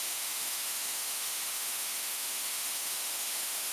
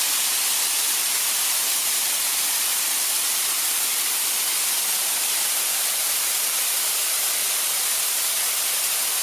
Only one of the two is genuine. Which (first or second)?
second